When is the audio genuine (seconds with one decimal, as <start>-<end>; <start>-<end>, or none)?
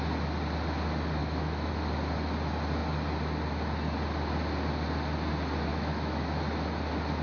0.0-1.2; 1.7-5.7; 6.4-7.2